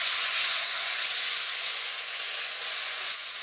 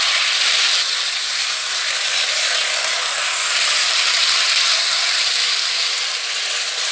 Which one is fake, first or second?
first